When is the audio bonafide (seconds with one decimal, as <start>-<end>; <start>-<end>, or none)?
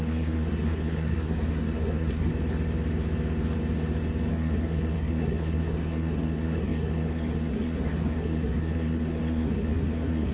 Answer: 2.3-4.3